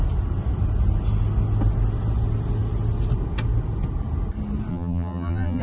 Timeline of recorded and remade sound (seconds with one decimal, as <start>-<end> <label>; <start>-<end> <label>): 0.0-4.7 recorded; 4.7-5.6 remade